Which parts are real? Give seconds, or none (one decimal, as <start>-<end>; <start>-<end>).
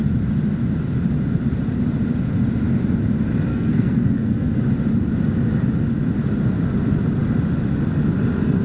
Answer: 0.0-3.5; 4.6-8.6